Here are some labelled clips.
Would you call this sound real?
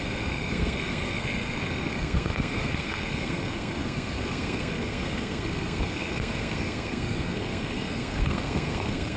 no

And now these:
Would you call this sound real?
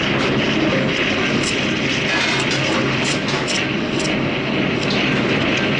yes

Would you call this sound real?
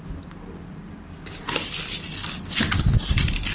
yes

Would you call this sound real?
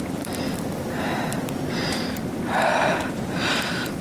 yes